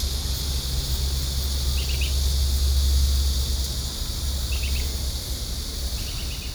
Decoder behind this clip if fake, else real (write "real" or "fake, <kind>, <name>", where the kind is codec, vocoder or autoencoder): real